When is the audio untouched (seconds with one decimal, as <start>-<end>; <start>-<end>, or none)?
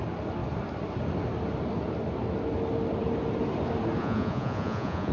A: 0.0-4.0